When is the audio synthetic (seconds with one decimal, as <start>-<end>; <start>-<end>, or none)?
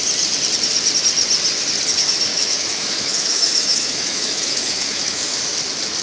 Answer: 2.3-5.4